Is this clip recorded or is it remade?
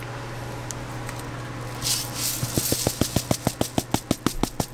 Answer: recorded